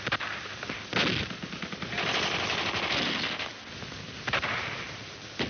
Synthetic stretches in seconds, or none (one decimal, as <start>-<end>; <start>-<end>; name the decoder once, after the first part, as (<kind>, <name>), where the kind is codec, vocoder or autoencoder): none